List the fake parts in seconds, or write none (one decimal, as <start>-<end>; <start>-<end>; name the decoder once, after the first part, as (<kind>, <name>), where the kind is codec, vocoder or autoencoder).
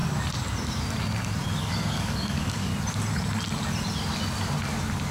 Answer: 1.6-2.7 (codec, DAC)